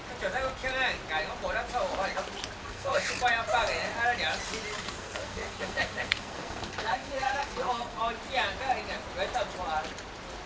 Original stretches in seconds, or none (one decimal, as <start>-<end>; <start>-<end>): 0.0-2.6; 3.1-4.8; 8.0-10.5